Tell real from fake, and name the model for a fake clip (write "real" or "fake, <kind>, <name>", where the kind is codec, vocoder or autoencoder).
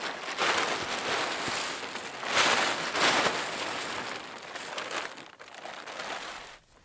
real